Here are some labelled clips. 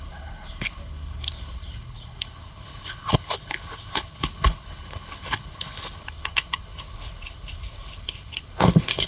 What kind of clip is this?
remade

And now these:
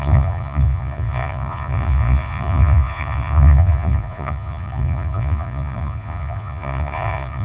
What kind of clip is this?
remade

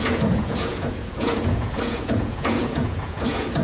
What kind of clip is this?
remade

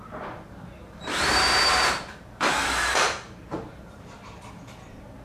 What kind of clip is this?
remade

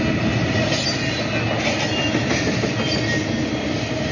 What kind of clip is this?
recorded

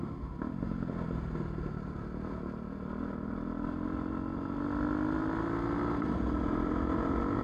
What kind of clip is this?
recorded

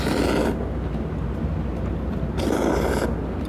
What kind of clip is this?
recorded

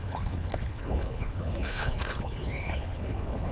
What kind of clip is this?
remade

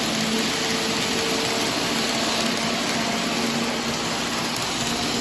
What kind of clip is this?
recorded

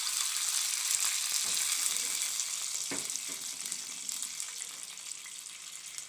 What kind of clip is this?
recorded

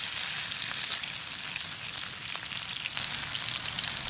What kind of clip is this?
recorded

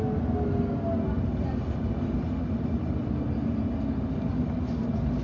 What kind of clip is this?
recorded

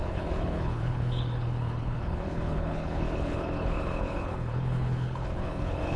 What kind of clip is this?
remade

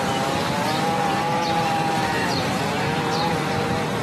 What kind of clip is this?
remade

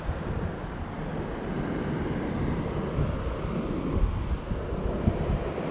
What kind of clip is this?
recorded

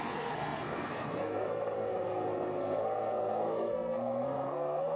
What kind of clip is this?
remade